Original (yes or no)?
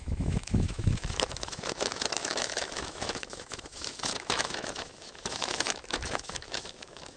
no